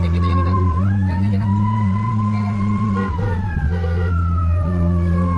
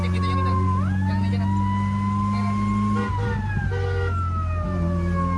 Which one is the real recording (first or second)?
second